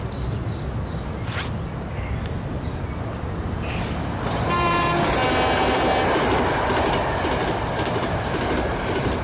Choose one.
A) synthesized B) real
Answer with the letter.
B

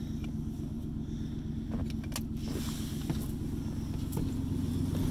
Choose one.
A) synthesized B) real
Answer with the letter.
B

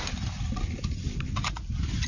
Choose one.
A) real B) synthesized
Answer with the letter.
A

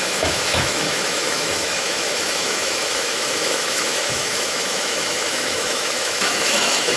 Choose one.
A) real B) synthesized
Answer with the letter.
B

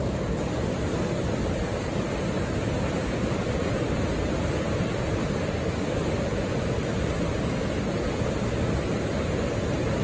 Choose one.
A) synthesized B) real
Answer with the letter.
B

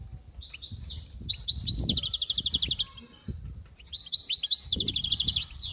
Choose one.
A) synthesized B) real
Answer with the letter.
B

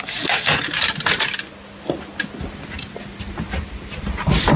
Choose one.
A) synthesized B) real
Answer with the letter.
B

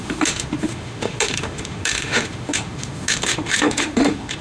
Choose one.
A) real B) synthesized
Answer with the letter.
B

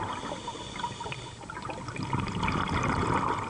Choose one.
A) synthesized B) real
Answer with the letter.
B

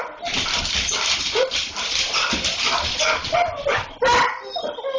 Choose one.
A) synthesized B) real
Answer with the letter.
B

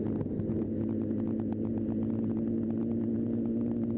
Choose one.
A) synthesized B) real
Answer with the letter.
B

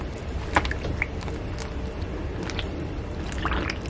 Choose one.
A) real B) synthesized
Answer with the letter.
A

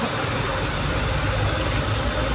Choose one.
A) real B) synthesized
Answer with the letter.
A